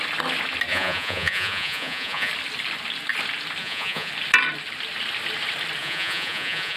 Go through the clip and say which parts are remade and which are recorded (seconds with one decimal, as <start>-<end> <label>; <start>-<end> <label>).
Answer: 0.0-0.7 recorded; 0.7-2.3 remade; 2.3-3.6 recorded; 3.6-4.1 remade; 4.1-5.8 recorded; 5.8-6.8 remade